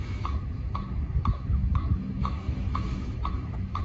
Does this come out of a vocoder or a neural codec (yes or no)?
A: yes